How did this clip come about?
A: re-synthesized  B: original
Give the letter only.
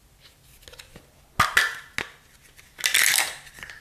B